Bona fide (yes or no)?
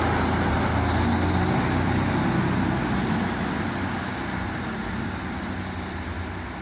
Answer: yes